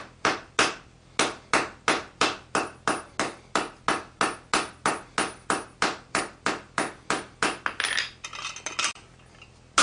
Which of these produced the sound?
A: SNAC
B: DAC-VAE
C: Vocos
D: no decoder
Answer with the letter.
D